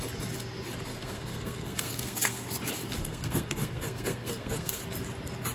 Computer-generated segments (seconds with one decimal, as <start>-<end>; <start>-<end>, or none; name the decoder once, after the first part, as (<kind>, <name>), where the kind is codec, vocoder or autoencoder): 0.9-2.4 (codec, SNAC); 3.0-4.8